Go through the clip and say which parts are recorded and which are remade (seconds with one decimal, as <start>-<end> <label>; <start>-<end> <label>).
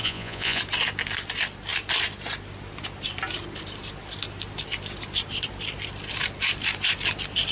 0.0-0.6 remade; 0.6-7.5 recorded